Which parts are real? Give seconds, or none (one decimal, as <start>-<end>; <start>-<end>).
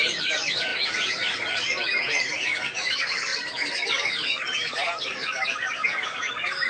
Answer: none